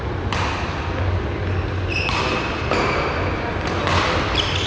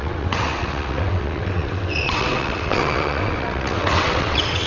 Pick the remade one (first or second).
second